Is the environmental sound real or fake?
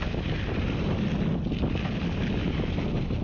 real